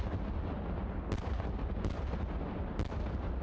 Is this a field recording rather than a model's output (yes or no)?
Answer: yes